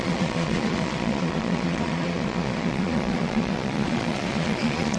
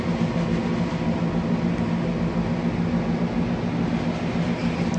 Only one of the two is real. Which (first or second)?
second